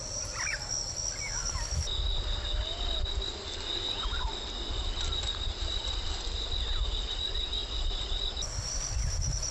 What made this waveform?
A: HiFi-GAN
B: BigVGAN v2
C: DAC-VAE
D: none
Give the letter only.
D